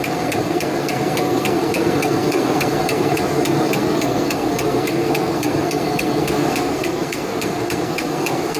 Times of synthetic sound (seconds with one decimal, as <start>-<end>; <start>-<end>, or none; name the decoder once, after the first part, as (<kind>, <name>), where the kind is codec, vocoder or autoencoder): 0.0-8.6 (codec, SNAC)